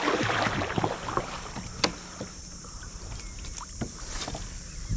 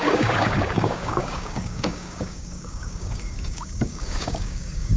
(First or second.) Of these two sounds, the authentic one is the first